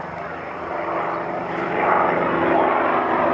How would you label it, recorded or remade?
recorded